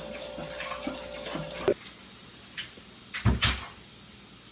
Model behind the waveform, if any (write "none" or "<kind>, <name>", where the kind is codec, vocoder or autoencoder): none